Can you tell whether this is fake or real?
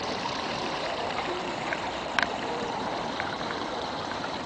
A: fake